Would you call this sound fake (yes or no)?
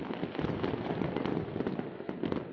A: no